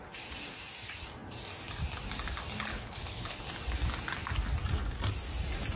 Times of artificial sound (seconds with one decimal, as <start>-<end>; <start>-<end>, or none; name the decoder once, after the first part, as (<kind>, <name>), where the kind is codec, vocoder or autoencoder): 2.7-3.4 (codec, HILCodec)

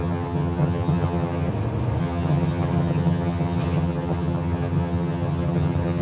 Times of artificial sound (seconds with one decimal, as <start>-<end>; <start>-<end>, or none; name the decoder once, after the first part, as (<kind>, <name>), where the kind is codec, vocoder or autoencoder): 0.0-1.5 (vocoder, HiFi-GAN); 2.0-6.0

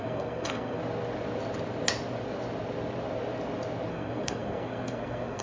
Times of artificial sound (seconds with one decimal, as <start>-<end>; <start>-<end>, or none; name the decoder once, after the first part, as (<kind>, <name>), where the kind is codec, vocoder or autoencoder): 0.0-0.8 (codec, SNAC); 3.9-5.4

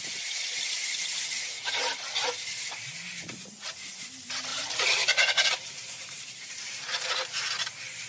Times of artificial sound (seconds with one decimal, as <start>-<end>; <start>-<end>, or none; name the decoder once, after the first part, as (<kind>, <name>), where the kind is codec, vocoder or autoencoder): 0.8-1.5 (vocoder, BigVGAN v2); 4.5-7.1

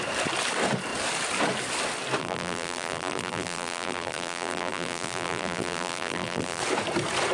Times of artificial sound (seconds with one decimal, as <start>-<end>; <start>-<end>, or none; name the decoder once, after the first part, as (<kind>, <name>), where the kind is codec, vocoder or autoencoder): 2.2-6.6 (vocoder, BigVGAN v2)